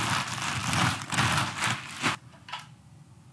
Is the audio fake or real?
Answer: real